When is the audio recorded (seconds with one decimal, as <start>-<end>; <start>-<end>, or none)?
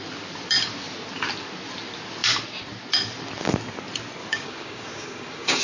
0.0-4.2